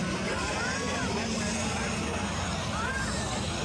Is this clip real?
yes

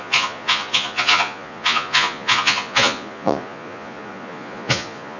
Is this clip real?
no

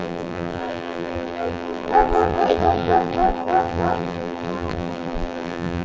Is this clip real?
no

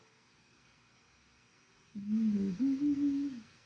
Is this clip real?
no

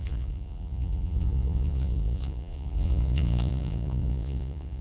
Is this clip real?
no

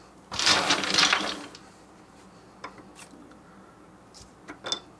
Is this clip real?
yes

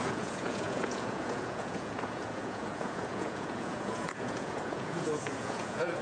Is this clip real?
no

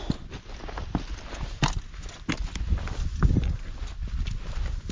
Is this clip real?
yes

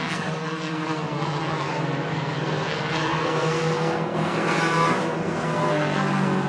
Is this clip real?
no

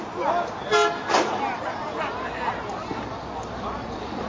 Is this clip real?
yes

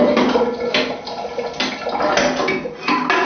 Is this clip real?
yes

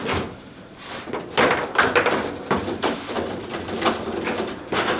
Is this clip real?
yes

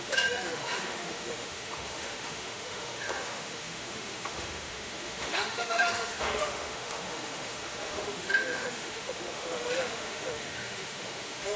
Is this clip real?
no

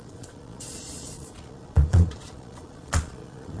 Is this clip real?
no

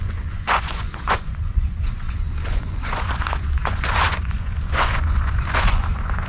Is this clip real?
no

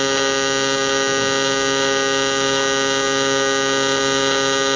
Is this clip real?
yes